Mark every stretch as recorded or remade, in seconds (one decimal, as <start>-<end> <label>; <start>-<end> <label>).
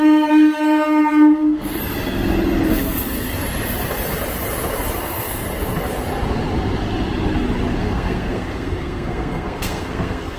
0.0-1.8 remade; 1.8-2.7 recorded; 2.7-3.3 remade; 3.3-5.0 recorded; 5.0-5.4 remade; 5.4-7.8 recorded; 7.8-10.4 remade